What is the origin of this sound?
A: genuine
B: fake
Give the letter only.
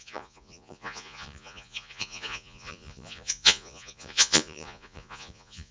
B